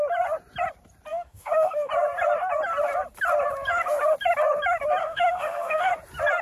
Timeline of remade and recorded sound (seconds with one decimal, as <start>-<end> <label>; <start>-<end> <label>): 0.0-1.1 recorded; 1.1-1.9 remade; 1.9-5.0 recorded; 5.0-5.9 remade; 5.9-6.4 recorded